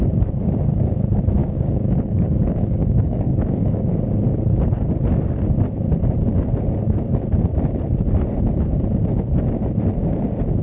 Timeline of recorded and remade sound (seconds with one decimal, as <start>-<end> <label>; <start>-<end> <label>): 0.0-1.4 recorded; 1.4-3.8 remade; 3.8-10.6 recorded